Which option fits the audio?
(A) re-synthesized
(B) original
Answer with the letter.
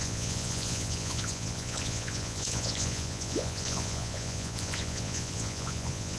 A